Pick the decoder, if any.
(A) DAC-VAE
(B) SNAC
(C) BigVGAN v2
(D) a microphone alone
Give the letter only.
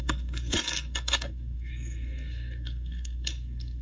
B